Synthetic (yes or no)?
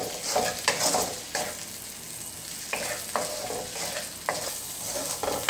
no